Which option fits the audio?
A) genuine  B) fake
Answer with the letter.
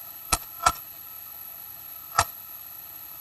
B